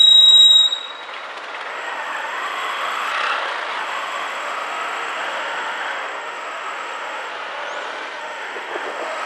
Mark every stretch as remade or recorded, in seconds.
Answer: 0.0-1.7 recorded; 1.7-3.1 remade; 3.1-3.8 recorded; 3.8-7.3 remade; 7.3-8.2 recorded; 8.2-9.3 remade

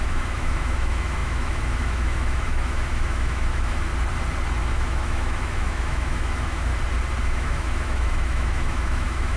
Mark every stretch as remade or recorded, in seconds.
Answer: 0.0-3.9 remade; 3.9-4.6 recorded; 4.6-6.7 remade; 6.7-7.2 recorded; 7.2-9.4 remade

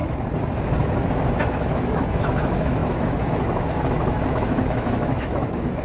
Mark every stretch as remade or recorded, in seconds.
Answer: 0.0-1.4 recorded; 1.4-5.8 remade